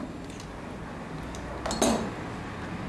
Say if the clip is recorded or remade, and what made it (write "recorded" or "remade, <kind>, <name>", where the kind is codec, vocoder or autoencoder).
recorded